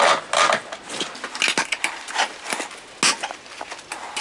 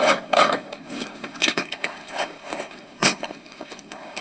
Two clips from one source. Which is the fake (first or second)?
second